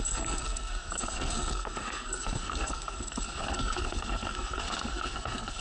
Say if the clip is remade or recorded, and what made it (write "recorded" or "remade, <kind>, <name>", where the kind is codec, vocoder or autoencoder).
remade, codec, SNAC